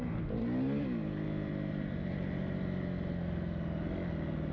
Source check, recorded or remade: recorded